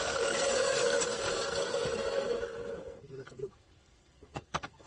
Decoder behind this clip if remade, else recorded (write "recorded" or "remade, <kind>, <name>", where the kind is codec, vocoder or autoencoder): remade, codec, SNAC